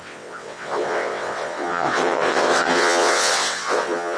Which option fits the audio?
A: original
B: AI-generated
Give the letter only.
B